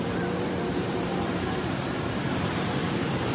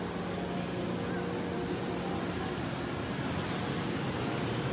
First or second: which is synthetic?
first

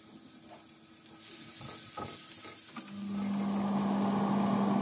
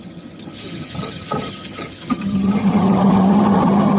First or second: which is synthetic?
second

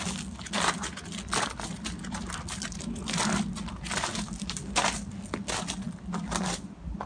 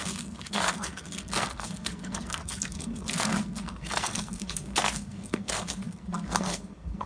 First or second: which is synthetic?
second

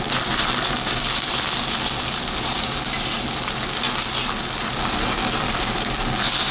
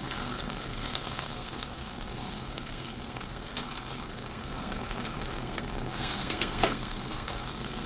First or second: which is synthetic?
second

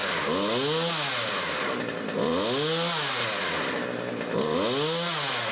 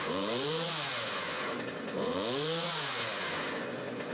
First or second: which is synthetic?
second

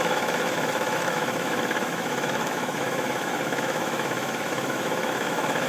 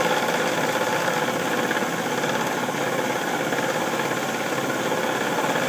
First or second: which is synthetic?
first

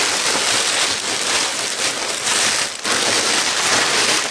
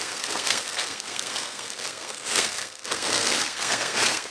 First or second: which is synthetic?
second